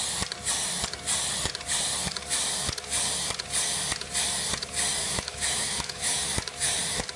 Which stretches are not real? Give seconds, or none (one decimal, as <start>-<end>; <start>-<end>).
5.0-6.2